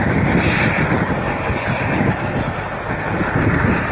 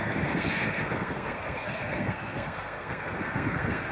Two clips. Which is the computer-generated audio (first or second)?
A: second